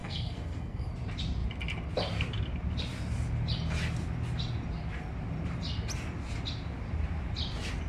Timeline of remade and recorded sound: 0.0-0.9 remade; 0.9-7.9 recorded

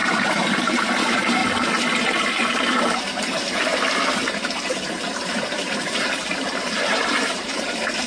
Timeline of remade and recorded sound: 0.0-1.4 remade; 1.4-2.0 recorded; 2.0-3.7 remade; 3.7-4.7 recorded; 4.7-8.1 remade

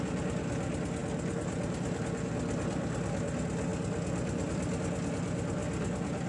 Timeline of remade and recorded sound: 0.0-6.3 recorded